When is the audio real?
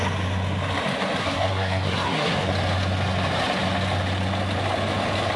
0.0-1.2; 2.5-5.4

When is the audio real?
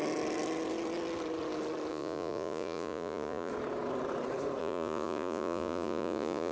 0.0-1.9; 3.5-4.6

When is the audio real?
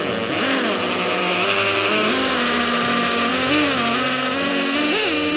0.0-1.2; 2.3-5.4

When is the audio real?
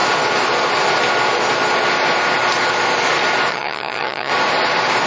0.0-3.5; 4.3-5.1